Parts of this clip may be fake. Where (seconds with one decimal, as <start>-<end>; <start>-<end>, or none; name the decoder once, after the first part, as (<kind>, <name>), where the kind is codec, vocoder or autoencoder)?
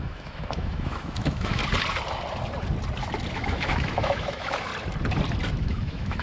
0.0-1.6 (autoencoder, DAC-VAE); 3.3-4.7; 5.5-6.2